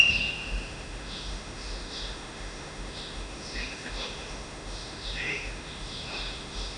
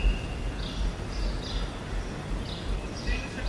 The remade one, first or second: first